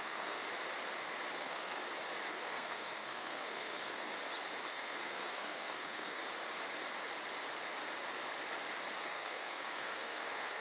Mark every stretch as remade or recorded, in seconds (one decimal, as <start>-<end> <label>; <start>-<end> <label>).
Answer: 0.0-0.4 remade; 0.4-1.4 recorded; 1.4-1.8 remade; 1.8-2.3 recorded; 2.3-4.1 remade; 4.1-4.7 recorded; 4.7-6.2 remade; 6.2-9.0 recorded; 9.0-10.6 remade